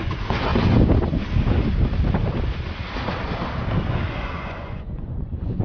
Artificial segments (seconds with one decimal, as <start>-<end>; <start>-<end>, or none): 0.0-0.5; 3.9-5.6